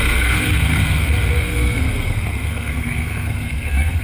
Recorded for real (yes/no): no